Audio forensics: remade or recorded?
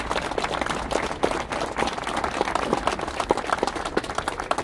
recorded